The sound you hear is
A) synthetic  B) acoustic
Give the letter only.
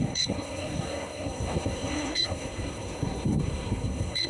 A